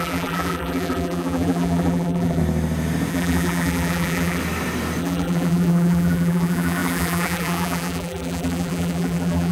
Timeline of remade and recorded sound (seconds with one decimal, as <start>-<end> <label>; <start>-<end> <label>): 0.0-2.4 remade; 2.4-3.1 recorded; 3.1-4.4 remade; 4.4-5.0 recorded; 5.0-9.5 remade